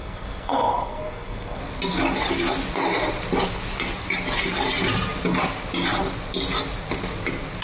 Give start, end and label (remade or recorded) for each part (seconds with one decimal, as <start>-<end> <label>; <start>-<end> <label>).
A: 0.0-1.6 remade; 1.6-7.6 recorded